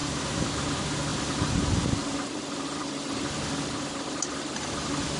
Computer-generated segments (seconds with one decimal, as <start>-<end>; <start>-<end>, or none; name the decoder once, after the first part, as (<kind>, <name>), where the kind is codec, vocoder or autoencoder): 0.0-0.7 (vocoder, BigVGAN v2); 1.1-1.9